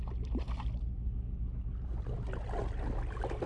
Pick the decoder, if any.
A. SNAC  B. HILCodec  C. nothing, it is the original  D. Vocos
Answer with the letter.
C